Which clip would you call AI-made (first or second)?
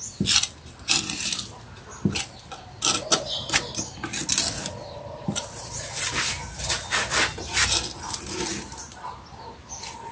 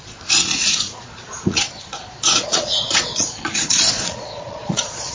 second